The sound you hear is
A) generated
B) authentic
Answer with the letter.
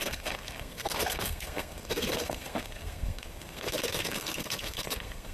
A